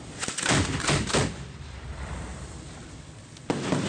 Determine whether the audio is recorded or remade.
recorded